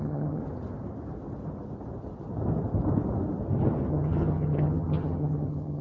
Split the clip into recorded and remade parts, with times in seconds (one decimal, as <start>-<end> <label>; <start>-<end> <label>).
0.0-0.4 remade; 0.4-3.9 recorded; 3.9-5.8 remade